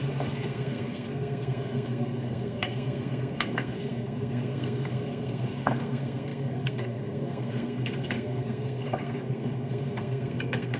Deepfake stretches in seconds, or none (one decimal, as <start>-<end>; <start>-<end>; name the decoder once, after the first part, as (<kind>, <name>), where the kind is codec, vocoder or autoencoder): 0.0-10.8 (codec, SNAC)